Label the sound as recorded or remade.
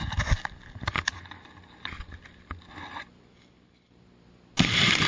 recorded